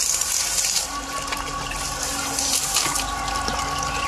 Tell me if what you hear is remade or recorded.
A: recorded